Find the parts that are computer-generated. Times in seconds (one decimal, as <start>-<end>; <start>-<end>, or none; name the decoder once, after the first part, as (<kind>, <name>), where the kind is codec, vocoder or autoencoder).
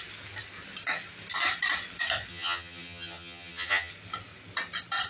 2.3-3.9 (vocoder, HiFi-GAN)